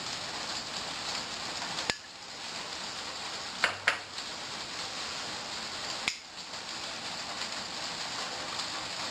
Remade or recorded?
recorded